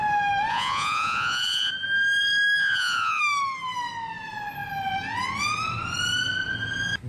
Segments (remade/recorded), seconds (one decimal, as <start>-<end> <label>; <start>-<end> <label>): 0.0-0.5 recorded; 0.5-1.7 remade; 1.7-2.6 recorded; 2.6-3.2 remade; 3.2-7.1 recorded